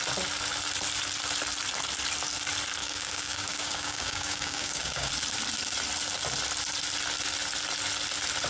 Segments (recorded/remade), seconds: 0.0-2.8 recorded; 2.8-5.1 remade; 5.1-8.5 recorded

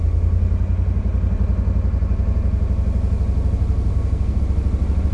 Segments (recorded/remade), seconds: 0.0-3.9 recorded; 3.9-4.4 remade; 4.4-5.1 recorded

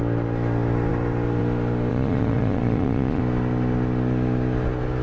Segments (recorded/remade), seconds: 0.0-1.9 recorded; 1.9-3.2 remade; 3.2-5.0 recorded

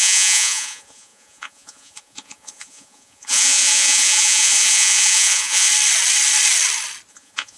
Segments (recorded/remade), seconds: 0.0-5.7 remade; 5.7-7.1 recorded; 7.1-7.6 remade

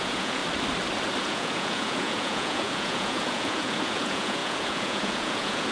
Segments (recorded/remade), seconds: 0.0-0.4 remade; 0.4-1.2 recorded; 1.2-5.7 remade